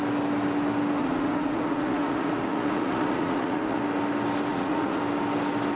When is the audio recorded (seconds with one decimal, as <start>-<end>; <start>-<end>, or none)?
0.0-1.0; 3.8-4.5; 5.0-5.8